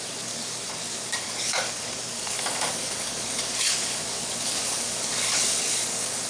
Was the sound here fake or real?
fake